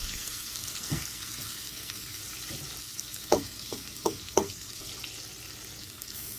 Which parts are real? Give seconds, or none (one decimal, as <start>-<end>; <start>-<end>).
2.2-2.8; 4.9-5.8